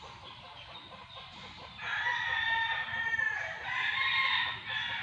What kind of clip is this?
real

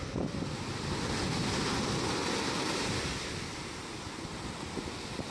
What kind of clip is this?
real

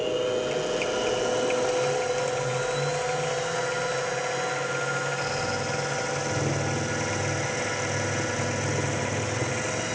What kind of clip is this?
real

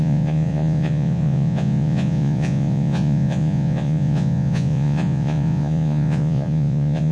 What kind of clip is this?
fake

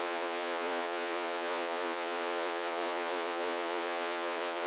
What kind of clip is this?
fake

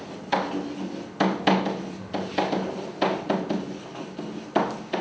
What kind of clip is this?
real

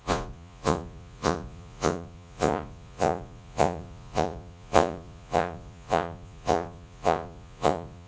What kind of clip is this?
fake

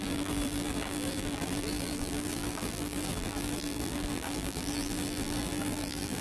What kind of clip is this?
fake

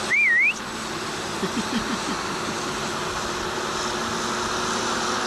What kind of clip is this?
real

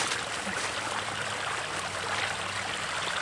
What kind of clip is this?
fake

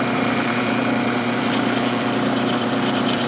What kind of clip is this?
fake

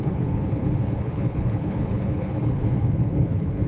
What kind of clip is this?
fake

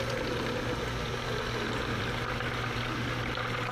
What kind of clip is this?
real